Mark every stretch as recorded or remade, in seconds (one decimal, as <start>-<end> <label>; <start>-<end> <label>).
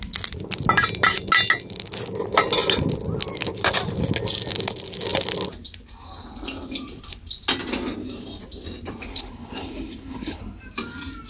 0.0-9.1 recorded; 9.1-10.4 remade; 10.4-11.3 recorded